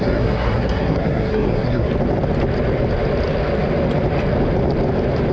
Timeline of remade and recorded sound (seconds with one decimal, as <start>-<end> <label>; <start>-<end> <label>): 0.0-1.9 remade; 1.9-5.3 recorded